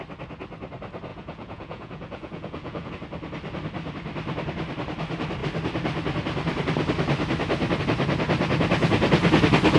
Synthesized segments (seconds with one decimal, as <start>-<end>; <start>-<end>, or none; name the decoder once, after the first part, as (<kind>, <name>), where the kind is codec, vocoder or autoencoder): 1.1-2.9 (vocoder, Vocos)